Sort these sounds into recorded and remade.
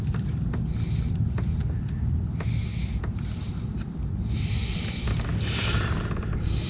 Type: remade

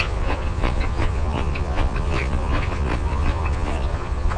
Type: remade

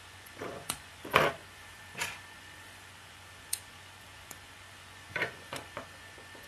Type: remade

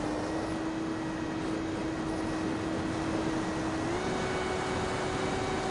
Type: recorded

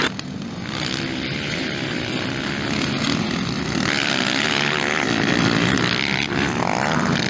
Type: recorded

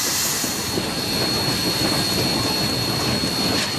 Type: recorded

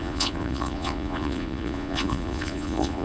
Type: remade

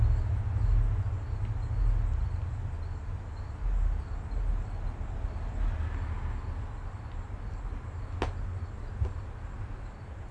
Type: recorded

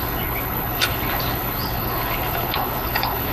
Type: remade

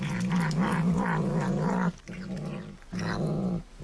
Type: recorded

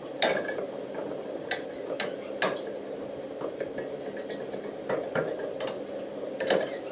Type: recorded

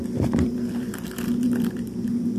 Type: remade